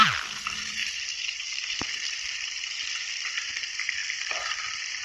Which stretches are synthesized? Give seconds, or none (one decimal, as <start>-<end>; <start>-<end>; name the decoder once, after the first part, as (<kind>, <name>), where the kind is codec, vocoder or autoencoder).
none